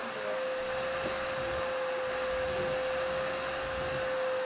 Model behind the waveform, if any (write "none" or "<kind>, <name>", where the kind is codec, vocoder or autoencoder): none